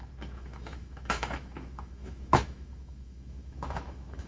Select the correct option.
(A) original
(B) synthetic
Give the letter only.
B